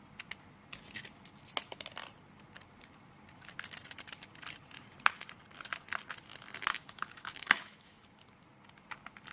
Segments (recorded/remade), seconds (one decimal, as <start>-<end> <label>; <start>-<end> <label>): 0.0-6.7 recorded; 6.7-8.2 remade; 8.2-9.3 recorded